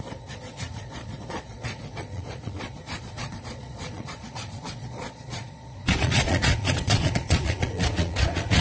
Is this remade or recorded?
remade